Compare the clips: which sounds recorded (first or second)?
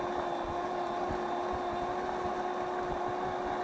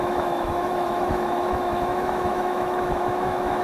first